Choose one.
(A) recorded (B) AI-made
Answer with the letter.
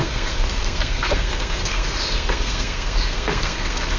B